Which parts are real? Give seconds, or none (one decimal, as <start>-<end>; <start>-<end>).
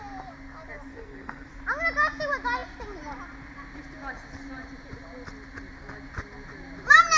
0.0-0.9; 1.5-7.2